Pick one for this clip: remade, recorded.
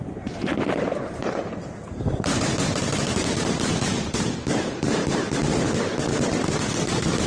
remade